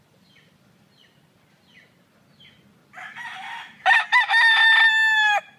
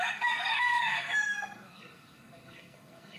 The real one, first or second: first